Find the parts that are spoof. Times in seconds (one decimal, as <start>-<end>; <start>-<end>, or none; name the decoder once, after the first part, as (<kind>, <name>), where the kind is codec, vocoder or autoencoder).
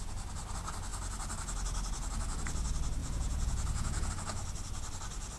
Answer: 3.0-4.1 (vocoder, Vocos)